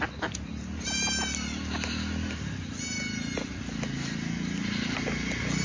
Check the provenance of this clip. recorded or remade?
recorded